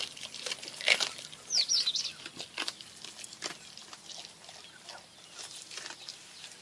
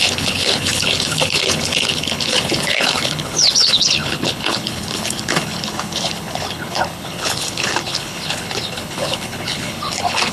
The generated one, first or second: second